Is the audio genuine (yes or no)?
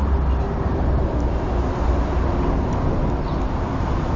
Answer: yes